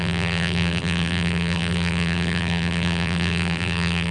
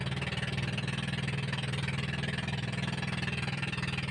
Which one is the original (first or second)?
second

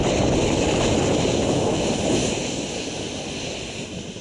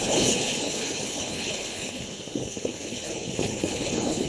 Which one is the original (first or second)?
first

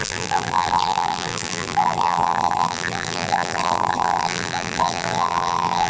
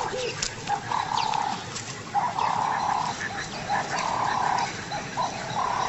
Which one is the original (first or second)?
second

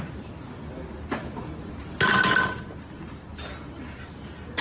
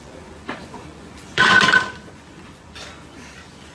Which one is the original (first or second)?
first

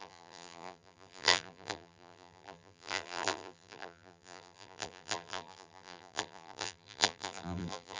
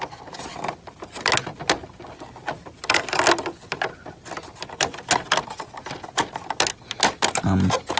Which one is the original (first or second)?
second